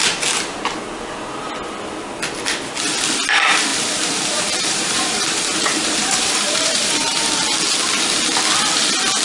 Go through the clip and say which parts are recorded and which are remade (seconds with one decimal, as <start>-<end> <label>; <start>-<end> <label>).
0.0-3.7 recorded; 3.7-7.3 remade; 7.3-9.2 recorded